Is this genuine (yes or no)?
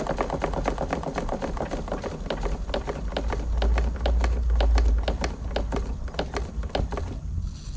yes